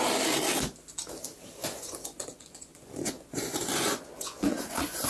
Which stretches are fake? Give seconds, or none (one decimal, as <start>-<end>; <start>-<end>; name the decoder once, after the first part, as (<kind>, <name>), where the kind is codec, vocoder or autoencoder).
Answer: 1.6-5.1 (vocoder, Vocos)